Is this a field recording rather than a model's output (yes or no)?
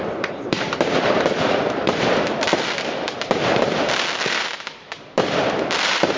no